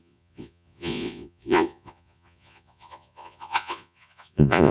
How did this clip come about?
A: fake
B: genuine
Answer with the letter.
A